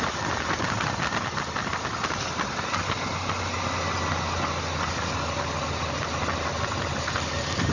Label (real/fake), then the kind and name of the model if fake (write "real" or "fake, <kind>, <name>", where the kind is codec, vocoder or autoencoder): real